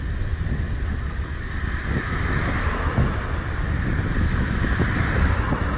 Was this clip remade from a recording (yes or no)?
no